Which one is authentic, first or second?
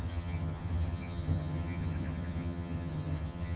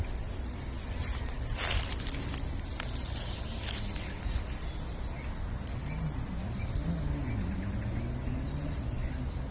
second